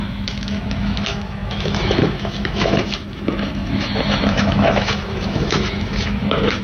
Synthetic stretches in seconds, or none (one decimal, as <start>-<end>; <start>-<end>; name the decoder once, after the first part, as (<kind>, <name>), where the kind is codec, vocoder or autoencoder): 0.0-6.6 (autoencoder, DAC-VAE)